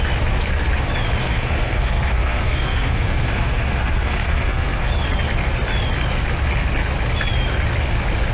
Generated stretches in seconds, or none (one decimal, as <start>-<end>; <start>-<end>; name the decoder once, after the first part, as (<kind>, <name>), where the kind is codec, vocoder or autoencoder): 1.2-4.9 (codec, SNAC)

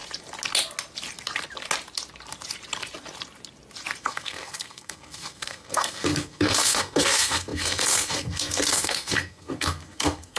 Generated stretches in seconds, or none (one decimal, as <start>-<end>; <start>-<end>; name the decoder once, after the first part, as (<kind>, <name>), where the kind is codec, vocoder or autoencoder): 4.0-10.4 (codec, SNAC)